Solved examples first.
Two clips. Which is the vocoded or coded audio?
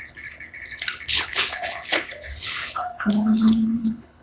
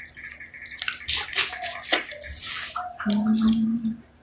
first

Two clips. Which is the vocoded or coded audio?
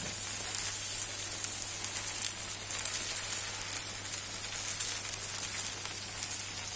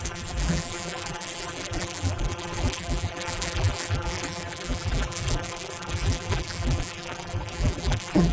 second